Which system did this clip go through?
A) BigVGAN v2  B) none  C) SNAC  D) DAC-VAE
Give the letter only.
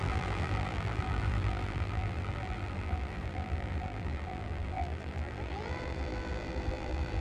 A